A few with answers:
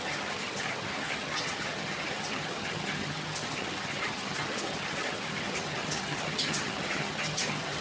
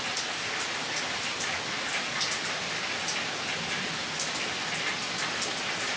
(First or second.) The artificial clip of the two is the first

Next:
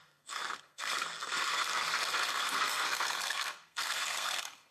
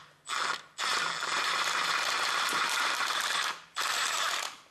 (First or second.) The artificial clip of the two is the first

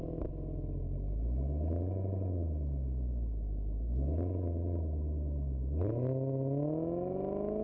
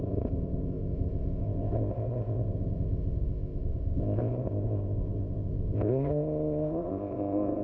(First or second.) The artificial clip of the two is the second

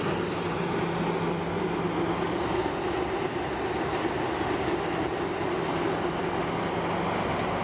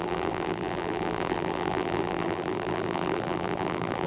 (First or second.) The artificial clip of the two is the second